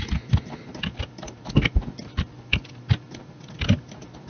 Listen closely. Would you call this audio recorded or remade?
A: recorded